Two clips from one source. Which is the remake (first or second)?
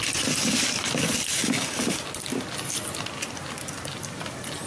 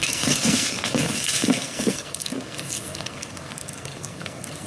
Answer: second